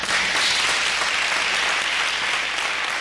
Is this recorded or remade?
recorded